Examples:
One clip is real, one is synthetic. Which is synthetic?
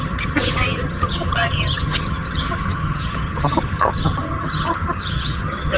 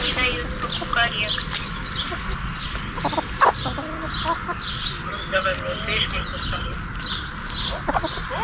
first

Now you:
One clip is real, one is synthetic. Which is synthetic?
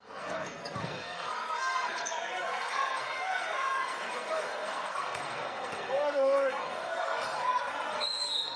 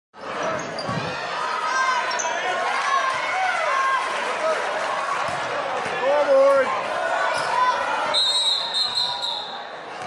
first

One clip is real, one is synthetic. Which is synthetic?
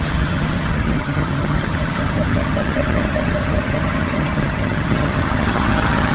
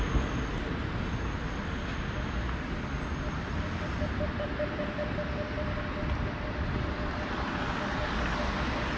first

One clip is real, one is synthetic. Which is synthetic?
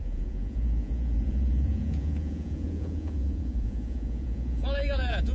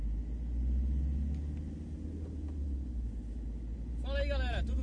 first